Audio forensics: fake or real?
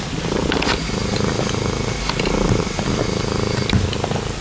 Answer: real